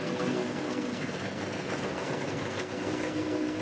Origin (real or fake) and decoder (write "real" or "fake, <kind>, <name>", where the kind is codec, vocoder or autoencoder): fake, codec, SNAC